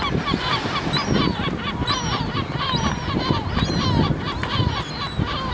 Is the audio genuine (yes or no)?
no